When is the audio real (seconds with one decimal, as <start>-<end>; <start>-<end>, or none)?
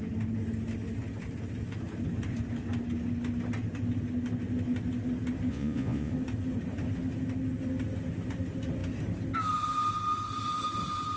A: 0.0-5.5; 6.1-11.2